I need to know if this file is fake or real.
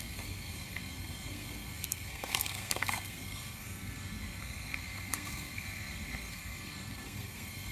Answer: fake